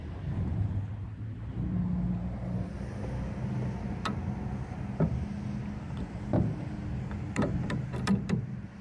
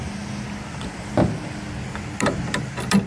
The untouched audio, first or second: second